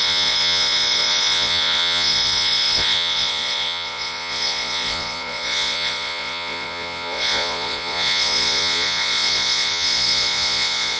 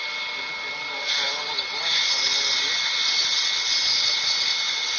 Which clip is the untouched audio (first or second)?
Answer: second